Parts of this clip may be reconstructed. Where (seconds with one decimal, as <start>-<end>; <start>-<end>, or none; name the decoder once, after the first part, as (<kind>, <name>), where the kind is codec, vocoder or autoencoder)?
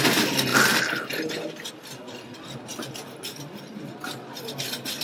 none